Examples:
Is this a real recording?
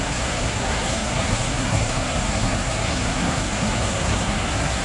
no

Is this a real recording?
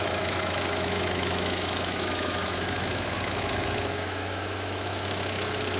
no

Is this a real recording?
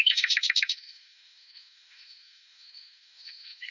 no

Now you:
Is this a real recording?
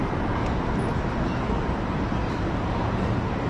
yes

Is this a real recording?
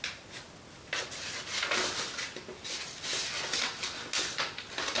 yes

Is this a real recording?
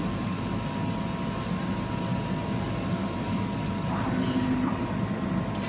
yes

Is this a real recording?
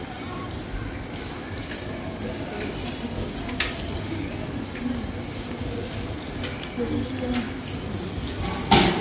yes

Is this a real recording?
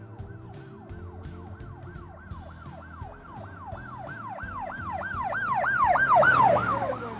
yes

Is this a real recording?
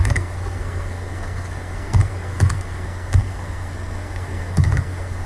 no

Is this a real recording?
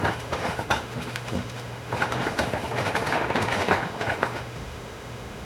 no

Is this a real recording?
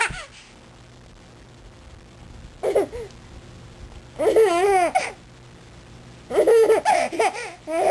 yes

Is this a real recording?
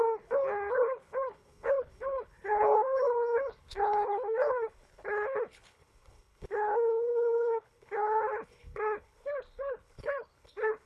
no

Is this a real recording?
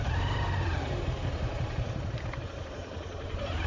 no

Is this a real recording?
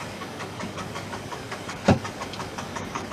no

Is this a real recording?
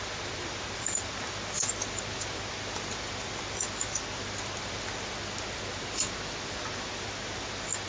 yes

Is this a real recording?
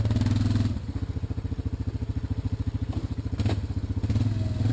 yes